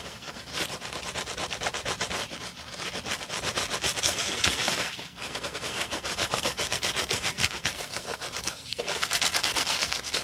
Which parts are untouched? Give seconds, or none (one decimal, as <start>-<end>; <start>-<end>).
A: 0.5-4.0